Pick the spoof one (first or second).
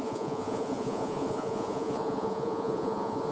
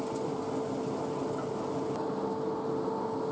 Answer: first